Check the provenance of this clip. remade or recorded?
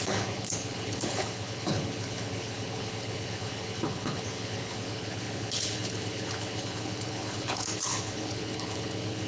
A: remade